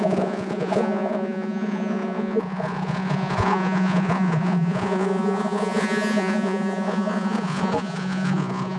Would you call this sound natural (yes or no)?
no